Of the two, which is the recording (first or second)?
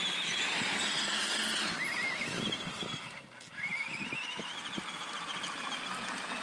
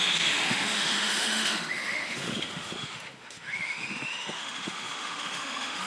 first